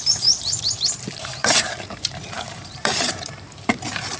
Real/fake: fake